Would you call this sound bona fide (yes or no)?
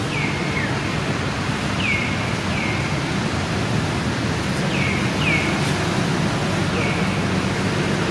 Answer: yes